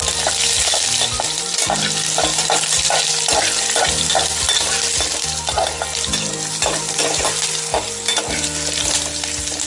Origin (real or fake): real